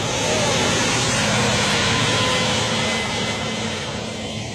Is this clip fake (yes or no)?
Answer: no